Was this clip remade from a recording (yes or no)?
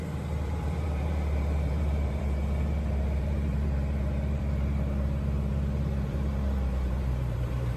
yes